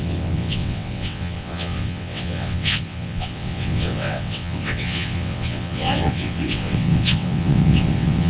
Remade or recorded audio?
remade